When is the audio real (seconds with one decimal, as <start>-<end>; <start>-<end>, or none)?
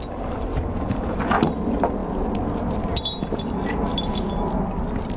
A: 0.0-0.5; 1.2-5.2